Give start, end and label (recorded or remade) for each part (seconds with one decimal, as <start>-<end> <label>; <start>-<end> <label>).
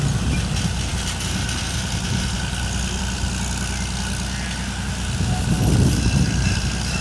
0.0-7.0 recorded